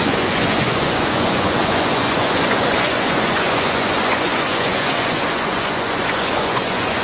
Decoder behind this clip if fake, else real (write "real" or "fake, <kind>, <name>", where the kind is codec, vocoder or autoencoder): fake, vocoder, Vocos